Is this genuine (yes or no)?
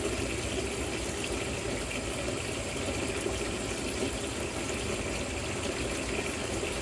yes